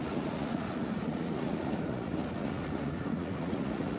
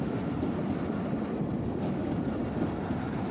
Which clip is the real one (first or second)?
second